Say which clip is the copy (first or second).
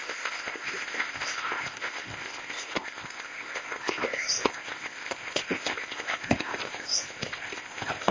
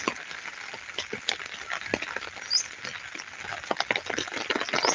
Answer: first